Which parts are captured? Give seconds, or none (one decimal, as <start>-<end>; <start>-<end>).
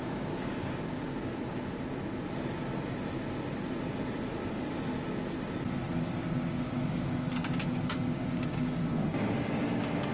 1.4-4.5; 5.0-5.9